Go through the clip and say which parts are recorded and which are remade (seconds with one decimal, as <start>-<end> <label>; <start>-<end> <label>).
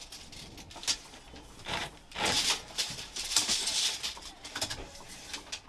0.0-1.8 recorded; 1.8-5.0 remade; 5.0-5.7 recorded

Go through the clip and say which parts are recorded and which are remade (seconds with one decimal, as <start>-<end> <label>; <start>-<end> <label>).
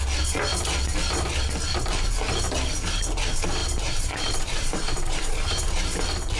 0.0-3.6 recorded; 3.6-6.0 remade; 6.0-6.4 recorded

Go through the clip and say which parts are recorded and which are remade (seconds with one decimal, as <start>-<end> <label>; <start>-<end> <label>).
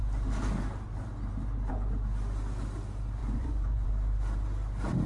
0.0-3.2 recorded; 3.2-3.9 remade; 3.9-5.1 recorded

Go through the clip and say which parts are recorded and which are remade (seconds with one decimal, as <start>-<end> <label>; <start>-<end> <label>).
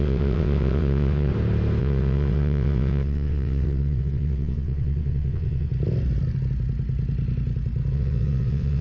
0.0-1.3 remade; 1.3-1.8 recorded; 1.8-5.7 remade; 5.7-7.9 recorded; 7.9-8.8 remade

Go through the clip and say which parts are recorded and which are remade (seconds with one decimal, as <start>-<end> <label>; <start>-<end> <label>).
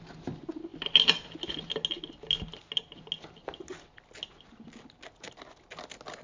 0.0-6.2 recorded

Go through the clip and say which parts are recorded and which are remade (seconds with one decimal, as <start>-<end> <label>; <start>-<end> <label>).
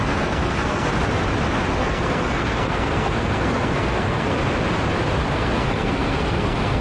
0.0-0.9 remade; 0.9-1.8 recorded; 1.8-4.4 remade; 4.4-5.3 recorded; 5.3-6.8 remade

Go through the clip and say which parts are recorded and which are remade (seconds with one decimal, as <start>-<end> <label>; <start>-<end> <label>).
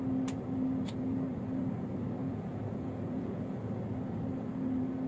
0.0-2.2 recorded; 2.2-3.7 remade; 3.7-5.1 recorded